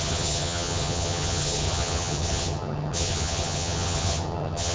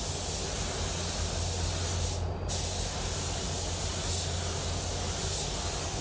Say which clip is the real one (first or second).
second